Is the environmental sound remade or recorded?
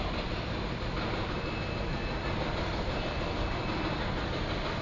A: recorded